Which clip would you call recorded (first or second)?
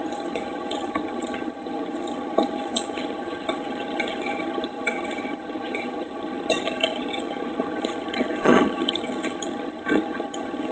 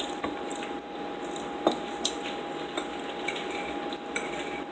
second